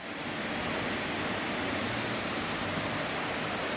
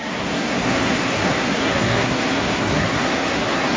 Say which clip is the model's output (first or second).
second